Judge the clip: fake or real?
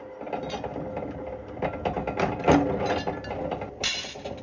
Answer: real